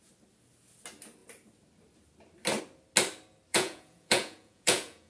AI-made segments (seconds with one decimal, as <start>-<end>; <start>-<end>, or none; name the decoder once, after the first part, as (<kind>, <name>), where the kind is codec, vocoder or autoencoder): 3.5-5.1 (vocoder, Vocos)